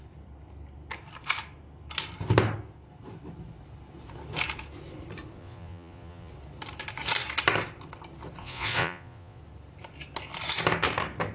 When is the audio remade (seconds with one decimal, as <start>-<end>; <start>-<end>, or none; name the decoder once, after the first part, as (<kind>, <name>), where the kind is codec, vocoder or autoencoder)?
5.4-6.3 (vocoder, Vocos); 8.4-9.4